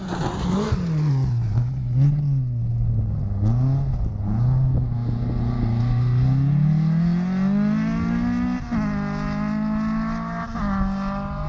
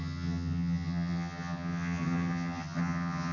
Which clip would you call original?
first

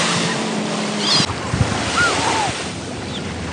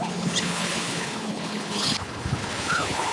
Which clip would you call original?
first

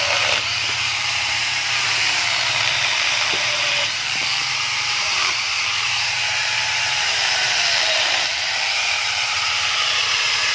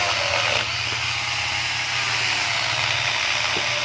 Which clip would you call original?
second